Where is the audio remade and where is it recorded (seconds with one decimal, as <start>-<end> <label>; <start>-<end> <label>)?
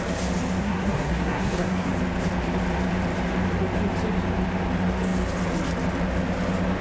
0.0-0.6 recorded; 0.6-1.9 remade; 1.9-6.8 recorded